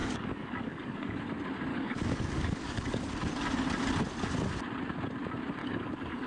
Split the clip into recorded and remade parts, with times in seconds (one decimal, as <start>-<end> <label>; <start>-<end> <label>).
0.0-1.2 remade; 1.2-1.7 recorded; 1.7-3.1 remade; 3.1-5.6 recorded; 5.6-6.3 remade